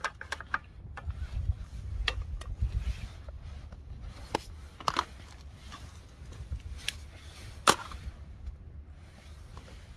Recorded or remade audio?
recorded